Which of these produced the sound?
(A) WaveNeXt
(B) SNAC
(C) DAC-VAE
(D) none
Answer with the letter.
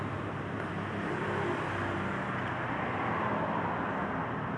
D